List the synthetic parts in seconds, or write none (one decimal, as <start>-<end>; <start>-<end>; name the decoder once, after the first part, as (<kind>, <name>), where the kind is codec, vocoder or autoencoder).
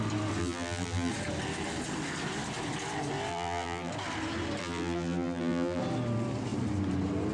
0.4-1.1 (vocoder, BigVGAN v2); 3.3-3.9; 4.6-5.8